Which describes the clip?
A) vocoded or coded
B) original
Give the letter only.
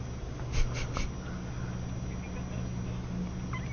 B